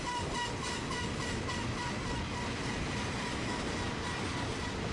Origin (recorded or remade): recorded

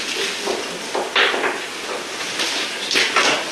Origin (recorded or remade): recorded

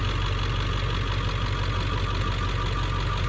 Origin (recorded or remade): recorded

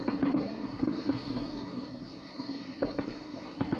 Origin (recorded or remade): remade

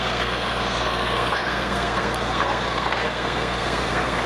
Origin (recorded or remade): remade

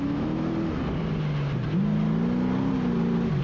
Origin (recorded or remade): recorded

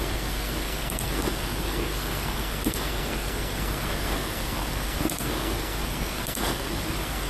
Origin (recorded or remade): remade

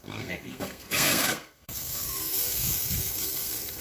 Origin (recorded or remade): remade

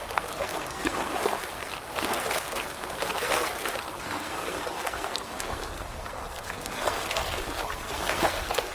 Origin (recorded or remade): remade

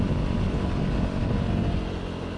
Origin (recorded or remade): recorded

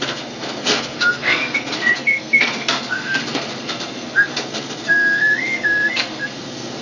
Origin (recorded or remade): remade